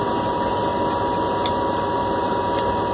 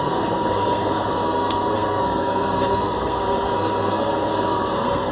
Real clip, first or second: first